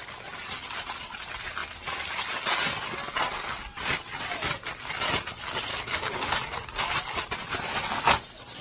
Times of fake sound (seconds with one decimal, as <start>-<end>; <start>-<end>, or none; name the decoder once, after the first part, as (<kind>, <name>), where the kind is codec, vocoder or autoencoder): 5.7-6.4 (codec, DAC)